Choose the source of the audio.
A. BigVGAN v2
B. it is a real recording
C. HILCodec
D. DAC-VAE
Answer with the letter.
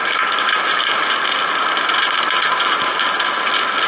B